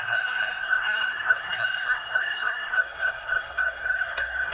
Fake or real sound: fake